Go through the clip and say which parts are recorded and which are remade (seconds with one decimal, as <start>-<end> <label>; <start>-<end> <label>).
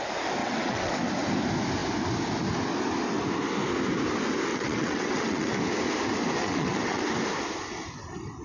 0.0-0.4 recorded; 0.4-0.9 remade; 0.9-4.5 recorded; 4.5-5.6 remade; 5.6-6.4 recorded; 6.4-7.1 remade; 7.1-8.4 recorded